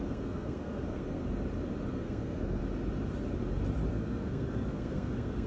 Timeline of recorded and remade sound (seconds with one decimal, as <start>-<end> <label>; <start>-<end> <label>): 0.0-1.2 remade; 1.2-1.9 recorded; 1.9-2.6 remade; 2.6-3.9 recorded; 3.9-5.5 remade